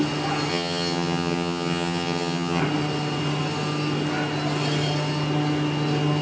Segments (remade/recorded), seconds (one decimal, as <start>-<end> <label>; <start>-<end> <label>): 0.0-0.5 recorded; 0.5-2.6 remade; 2.6-6.2 recorded